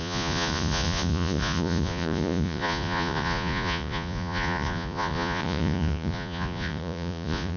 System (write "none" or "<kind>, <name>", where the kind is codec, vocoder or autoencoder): vocoder, Vocos